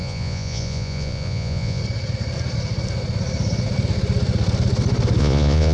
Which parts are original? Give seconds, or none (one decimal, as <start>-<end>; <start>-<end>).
1.8-5.2